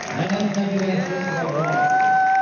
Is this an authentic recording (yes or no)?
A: yes